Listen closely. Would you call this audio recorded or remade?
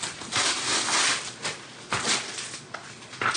recorded